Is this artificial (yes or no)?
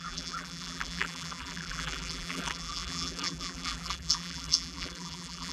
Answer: yes